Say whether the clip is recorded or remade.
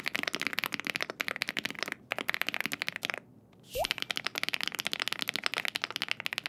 recorded